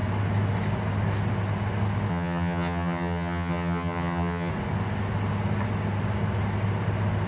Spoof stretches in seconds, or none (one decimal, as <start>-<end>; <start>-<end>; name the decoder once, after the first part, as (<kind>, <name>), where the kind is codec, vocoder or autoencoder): 2.1-4.5 (vocoder, HiFi-GAN)